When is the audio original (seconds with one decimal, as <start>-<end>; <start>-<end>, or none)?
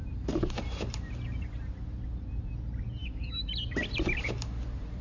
0.0-3.0; 3.5-5.0